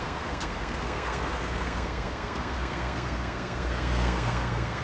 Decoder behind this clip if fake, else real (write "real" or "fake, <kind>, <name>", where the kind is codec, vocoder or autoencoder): fake, codec, SNAC